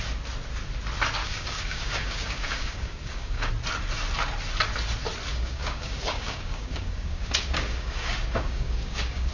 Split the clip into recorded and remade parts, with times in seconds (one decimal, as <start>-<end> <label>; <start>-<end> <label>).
0.0-1.2 recorded; 1.2-3.5 remade; 3.5-5.3 recorded; 5.3-9.3 remade